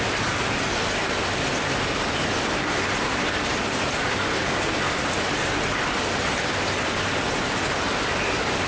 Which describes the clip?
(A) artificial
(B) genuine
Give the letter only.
B